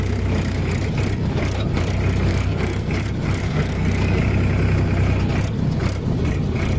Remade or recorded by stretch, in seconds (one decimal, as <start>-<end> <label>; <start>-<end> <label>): 0.0-2.3 recorded; 2.3-2.9 remade; 2.9-3.4 recorded; 3.4-4.2 remade; 4.2-6.8 recorded